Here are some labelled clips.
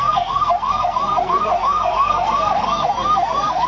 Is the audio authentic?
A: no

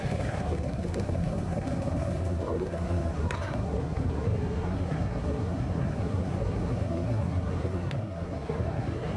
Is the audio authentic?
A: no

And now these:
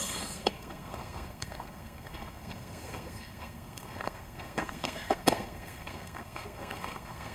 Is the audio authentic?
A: no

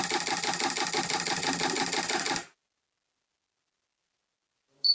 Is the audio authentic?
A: yes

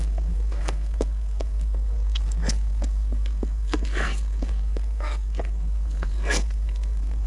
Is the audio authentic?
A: no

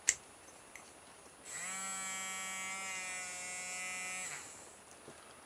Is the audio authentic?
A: yes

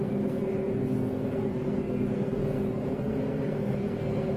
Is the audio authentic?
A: no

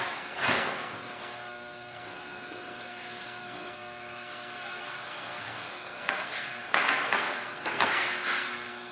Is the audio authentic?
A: no